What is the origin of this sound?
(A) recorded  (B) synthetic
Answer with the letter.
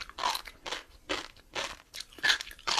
A